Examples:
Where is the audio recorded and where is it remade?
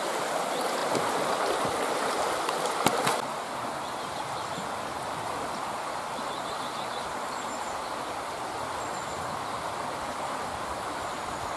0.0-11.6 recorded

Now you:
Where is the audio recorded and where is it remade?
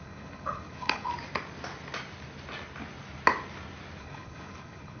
0.0-1.1 remade; 1.1-4.0 recorded; 4.0-5.0 remade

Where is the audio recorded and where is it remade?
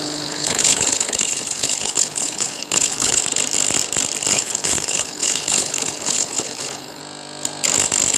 0.0-3.2 remade; 3.2-4.3 recorded; 4.3-7.0 remade; 7.0-8.2 recorded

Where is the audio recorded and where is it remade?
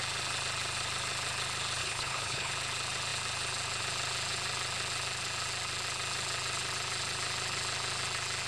0.0-1.8 recorded; 1.8-2.5 remade; 2.5-8.5 recorded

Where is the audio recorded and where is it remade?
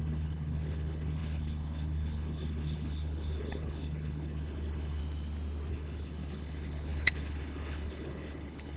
0.0-5.0 remade; 5.0-5.7 recorded; 5.7-8.8 remade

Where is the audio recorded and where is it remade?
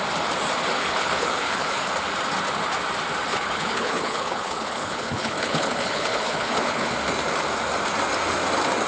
0.0-0.8 recorded; 0.8-1.9 remade; 1.9-3.3 recorded; 3.3-6.9 remade; 6.9-8.9 recorded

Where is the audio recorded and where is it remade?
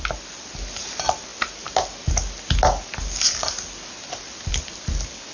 0.0-5.3 recorded